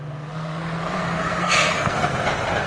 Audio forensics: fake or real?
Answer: fake